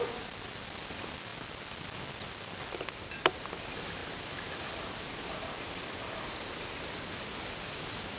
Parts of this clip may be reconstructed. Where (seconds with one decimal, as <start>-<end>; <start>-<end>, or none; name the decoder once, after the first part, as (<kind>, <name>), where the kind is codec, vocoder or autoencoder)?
none